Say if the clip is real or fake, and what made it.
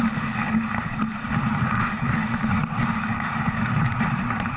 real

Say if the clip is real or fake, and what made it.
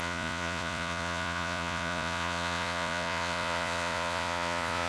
fake, vocoder, Vocos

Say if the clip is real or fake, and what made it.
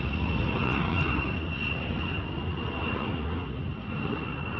fake, vocoder, Vocos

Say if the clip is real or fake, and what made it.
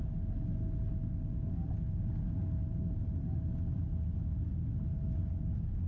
real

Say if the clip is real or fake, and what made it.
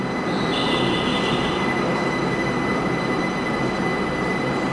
real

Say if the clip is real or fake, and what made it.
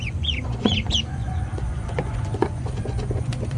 fake, vocoder, Vocos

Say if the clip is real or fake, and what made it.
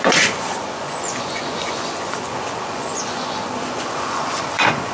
fake, vocoder, Vocos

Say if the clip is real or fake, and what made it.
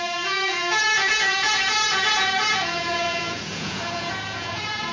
fake, vocoder, Vocos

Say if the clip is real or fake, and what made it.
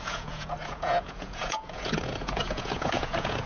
fake, vocoder, Vocos